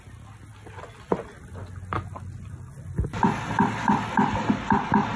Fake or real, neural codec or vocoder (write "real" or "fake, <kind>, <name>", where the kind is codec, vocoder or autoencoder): real